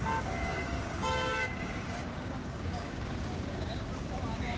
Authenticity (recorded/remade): remade